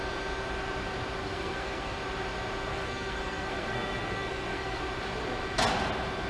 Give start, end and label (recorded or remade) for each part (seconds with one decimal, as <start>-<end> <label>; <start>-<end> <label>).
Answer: 0.0-1.2 recorded; 1.2-2.0 remade; 2.0-2.7 recorded; 2.7-4.8 remade; 4.8-6.3 recorded